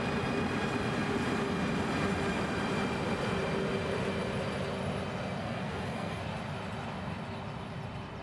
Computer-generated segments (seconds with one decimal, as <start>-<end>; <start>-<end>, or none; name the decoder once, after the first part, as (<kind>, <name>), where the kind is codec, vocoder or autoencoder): 5.4-6.2 (codec, SNAC)